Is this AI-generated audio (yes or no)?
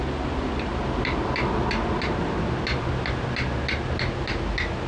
no